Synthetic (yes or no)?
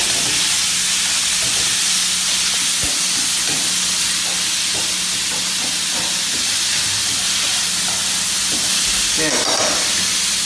no